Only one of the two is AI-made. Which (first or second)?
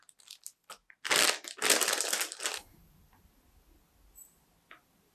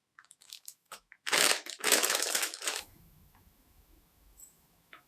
second